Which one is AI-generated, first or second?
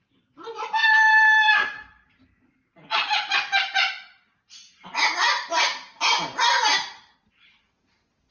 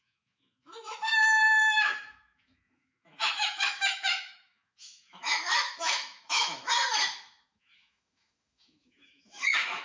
second